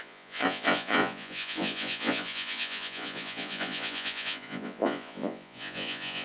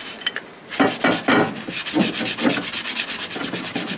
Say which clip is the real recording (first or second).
second